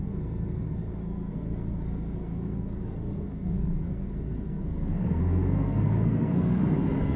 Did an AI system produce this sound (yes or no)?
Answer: yes